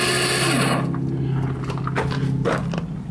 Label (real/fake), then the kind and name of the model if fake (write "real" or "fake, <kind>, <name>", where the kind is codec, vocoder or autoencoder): real